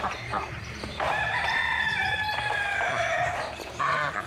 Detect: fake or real fake